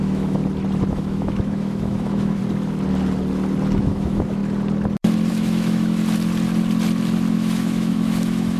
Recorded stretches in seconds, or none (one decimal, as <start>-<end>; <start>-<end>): 0.4-0.9; 2.4-3.8; 4.4-5.3; 6.0-7.3